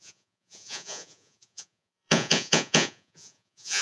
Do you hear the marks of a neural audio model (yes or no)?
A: yes